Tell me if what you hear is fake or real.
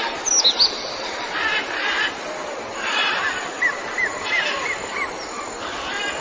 real